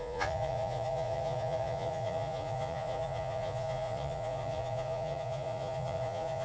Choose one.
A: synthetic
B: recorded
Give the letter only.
A